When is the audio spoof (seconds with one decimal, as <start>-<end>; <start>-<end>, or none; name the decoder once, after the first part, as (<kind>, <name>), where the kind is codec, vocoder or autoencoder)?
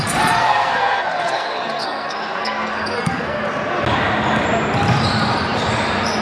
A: 0.4-3.4 (codec, SNAC)